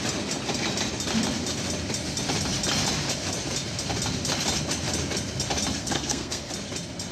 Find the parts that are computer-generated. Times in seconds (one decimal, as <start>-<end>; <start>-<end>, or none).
5.8-6.5